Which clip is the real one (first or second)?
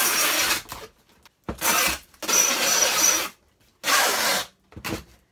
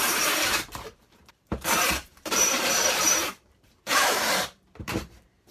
first